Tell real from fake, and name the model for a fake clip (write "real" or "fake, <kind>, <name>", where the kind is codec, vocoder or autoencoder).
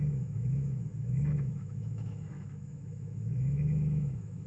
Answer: fake, autoencoder, DAC-VAE